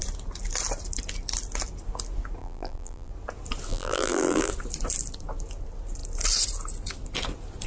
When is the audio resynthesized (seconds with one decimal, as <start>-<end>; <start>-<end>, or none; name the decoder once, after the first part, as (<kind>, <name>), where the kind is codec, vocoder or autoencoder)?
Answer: 2.4-3.1 (vocoder, BigVGAN v2); 3.7-4.5